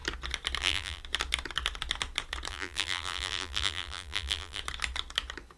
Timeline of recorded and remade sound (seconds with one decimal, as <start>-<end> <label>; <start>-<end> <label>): 0.0-0.6 recorded; 0.6-1.0 remade; 1.0-2.5 recorded; 2.5-4.6 remade; 4.6-5.6 recorded